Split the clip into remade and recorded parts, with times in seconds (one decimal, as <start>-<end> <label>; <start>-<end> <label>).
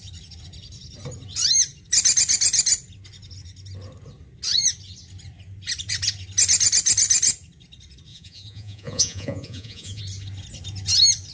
0.0-8.1 recorded; 8.1-10.0 remade; 10.0-11.3 recorded